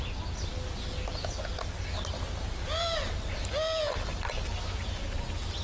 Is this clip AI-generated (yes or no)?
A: no